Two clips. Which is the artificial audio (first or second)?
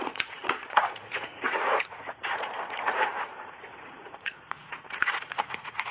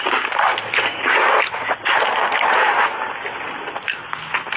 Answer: first